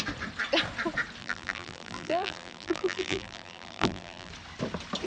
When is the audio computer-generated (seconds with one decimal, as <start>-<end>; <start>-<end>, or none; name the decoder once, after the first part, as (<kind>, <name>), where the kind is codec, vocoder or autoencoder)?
1.2-4.3 (vocoder, BigVGAN v2)